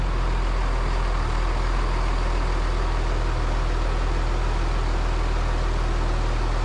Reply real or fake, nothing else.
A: real